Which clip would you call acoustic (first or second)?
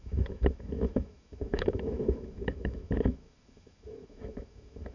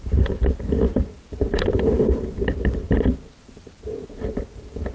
second